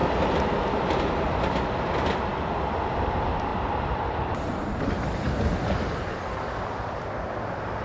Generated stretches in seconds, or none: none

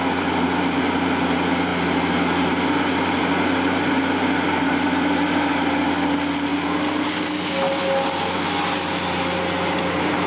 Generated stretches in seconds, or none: none

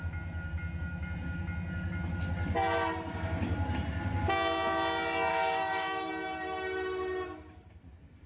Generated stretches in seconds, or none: 5.3-6.1

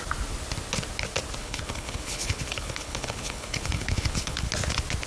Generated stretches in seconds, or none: 1.4-4.5

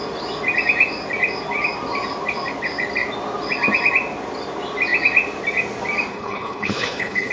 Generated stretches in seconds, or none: 6.1-7.3